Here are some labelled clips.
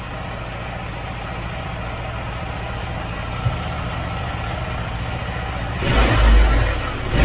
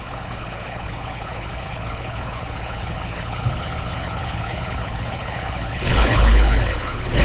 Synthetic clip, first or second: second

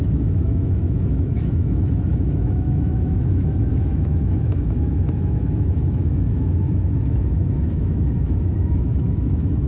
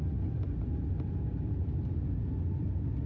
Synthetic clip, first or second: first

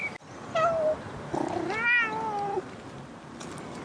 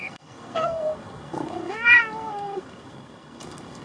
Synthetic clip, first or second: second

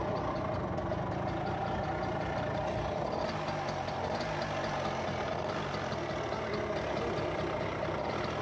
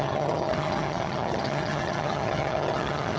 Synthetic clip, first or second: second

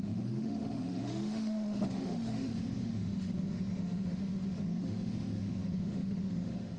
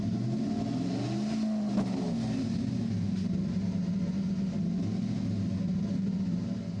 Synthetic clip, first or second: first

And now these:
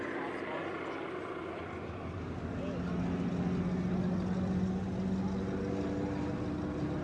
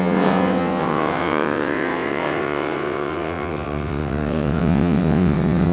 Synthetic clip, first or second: second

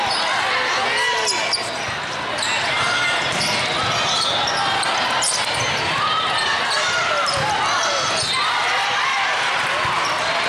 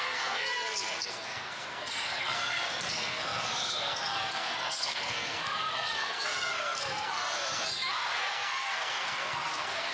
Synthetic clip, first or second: second